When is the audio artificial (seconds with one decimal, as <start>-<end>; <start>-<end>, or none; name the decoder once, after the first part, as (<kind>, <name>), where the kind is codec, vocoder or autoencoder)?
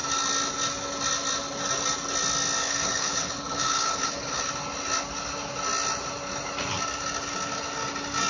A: 2.6-4.4 (codec, HILCodec)